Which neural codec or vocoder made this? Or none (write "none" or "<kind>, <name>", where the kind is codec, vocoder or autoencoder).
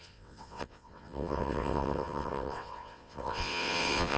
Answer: vocoder, WaveNeXt